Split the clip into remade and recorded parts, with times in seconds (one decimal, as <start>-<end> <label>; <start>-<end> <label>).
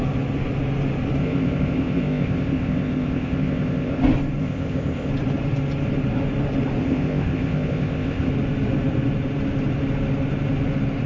0.0-1.2 recorded; 1.2-4.0 remade; 4.0-4.4 recorded; 4.4-5.1 remade; 5.1-6.8 recorded; 6.8-8.3 remade; 8.3-11.1 recorded